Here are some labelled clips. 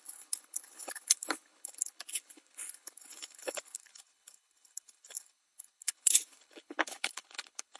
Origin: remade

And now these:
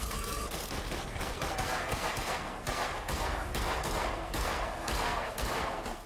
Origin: remade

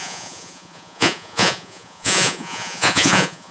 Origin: remade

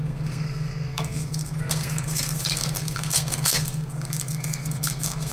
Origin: remade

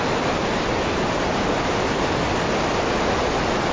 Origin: recorded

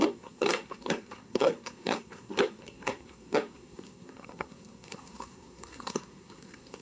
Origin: remade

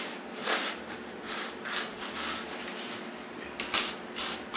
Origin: remade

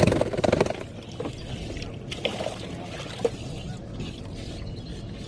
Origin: recorded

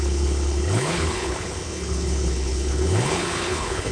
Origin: remade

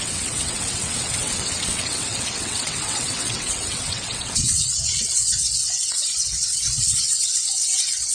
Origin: remade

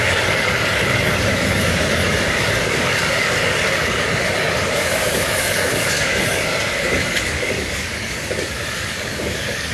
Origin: remade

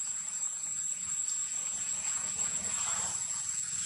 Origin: remade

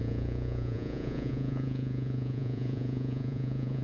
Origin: remade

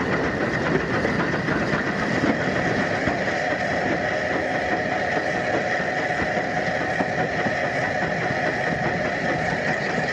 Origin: recorded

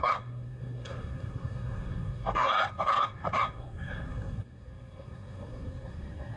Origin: remade